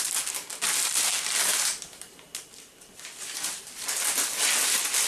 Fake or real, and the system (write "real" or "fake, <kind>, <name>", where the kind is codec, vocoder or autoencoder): real